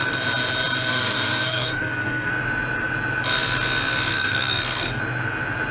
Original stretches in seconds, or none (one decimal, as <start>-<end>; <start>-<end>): 0.0-0.9; 2.3-4.1; 5.0-5.7

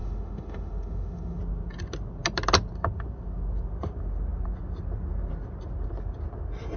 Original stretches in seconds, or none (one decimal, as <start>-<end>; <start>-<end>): 1.4-6.8